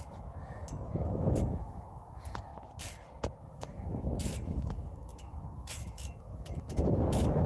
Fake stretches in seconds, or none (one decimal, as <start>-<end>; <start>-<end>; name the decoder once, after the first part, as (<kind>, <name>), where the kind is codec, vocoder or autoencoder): 0.0-2.5 (autoencoder, DAC-VAE); 3.4-7.5